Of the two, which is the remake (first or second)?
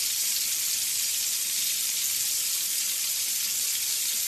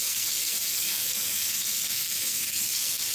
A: second